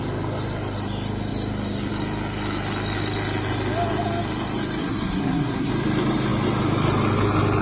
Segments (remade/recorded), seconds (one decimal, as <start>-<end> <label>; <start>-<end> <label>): 0.0-4.8 recorded; 4.8-5.7 remade; 5.7-7.6 recorded